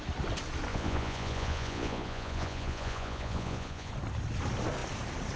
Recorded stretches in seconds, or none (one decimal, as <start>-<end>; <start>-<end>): 0.0-0.7; 3.9-5.4